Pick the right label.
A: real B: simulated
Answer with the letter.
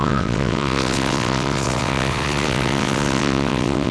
B